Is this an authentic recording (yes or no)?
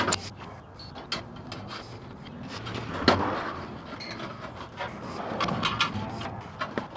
yes